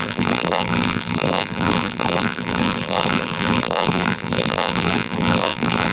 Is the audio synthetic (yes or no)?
yes